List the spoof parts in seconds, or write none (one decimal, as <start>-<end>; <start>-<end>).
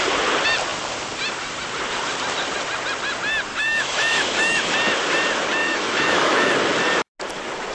3.5-4.7; 5.6-6.5